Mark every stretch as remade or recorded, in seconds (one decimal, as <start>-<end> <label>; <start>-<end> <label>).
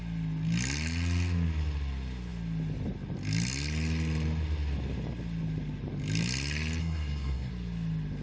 0.0-6.8 recorded; 6.8-7.5 remade; 7.5-8.2 recorded